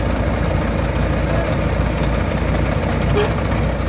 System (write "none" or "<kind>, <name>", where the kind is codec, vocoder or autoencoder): none